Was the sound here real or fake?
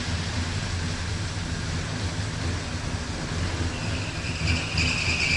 real